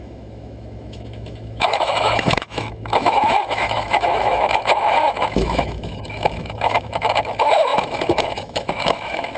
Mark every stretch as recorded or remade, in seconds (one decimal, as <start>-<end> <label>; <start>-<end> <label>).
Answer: 0.0-9.4 remade